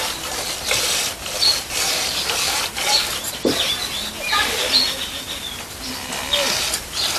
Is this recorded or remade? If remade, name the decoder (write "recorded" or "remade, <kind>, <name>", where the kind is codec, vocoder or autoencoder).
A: recorded